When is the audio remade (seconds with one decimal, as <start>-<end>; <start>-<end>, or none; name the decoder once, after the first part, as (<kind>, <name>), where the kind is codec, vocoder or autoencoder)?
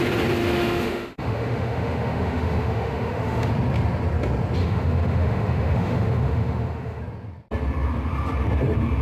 0.4-3.5 (autoencoder, DAC-VAE); 4.6-7.0